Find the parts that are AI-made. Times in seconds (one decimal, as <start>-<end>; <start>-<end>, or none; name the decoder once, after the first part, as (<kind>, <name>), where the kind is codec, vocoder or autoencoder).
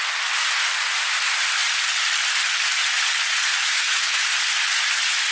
3.5-4.3 (autoencoder, DAC-VAE)